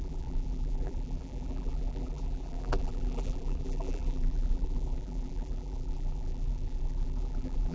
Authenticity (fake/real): fake